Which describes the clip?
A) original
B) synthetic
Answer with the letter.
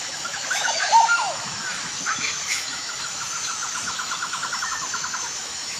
B